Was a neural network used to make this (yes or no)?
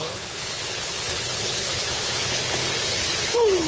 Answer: yes